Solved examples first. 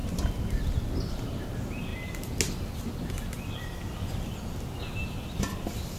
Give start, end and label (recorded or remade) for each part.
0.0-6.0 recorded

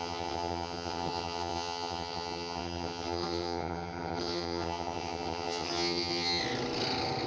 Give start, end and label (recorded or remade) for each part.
0.0-6.4 remade; 6.4-7.3 recorded

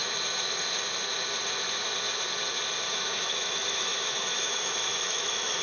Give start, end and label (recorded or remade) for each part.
0.0-2.9 recorded; 2.9-5.6 remade

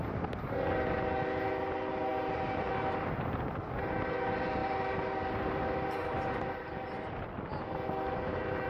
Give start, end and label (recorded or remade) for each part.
0.0-4.6 recorded; 4.6-6.6 remade; 6.6-8.7 recorded

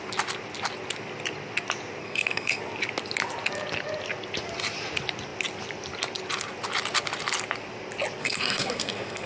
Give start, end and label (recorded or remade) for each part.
0.0-2.0 recorded; 2.0-2.6 remade; 2.6-8.2 recorded; 8.2-9.3 remade